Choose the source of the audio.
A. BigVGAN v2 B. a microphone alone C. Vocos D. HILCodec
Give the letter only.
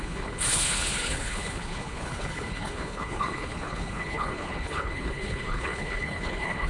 D